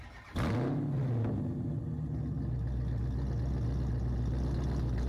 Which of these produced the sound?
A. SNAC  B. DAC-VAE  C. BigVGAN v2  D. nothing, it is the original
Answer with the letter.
D